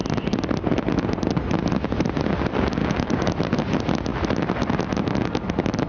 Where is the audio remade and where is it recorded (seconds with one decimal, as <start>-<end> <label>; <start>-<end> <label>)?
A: 0.0-2.8 recorded; 2.8-3.3 remade; 3.3-5.9 recorded